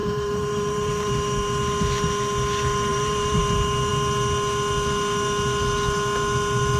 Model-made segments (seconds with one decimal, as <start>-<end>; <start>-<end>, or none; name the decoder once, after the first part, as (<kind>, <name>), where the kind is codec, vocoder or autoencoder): 0.0-1.1 (vocoder, BigVGAN v2); 2.9-3.4